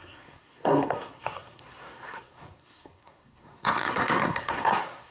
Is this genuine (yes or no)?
no